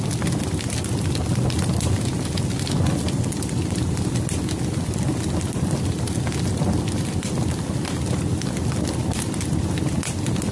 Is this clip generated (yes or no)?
no